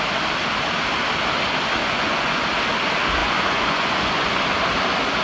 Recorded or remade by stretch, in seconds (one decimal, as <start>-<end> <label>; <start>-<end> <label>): 0.0-1.8 recorded; 1.8-2.4 remade; 2.4-3.2 recorded; 3.2-4.3 remade; 4.3-5.2 recorded